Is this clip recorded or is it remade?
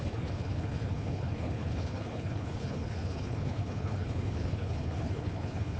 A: remade